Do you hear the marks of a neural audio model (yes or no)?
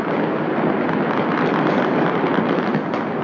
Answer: no